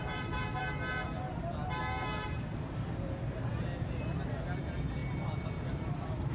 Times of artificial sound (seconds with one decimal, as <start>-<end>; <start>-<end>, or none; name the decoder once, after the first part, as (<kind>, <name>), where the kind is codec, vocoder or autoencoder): 0.0-0.6 (vocoder, BigVGAN v2); 1.8-3.5; 4.6-5.0; 5.7-6.3